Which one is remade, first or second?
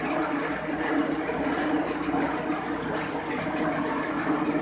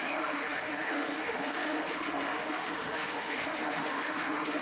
second